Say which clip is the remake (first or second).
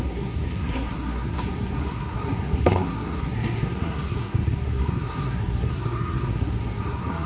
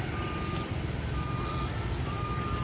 first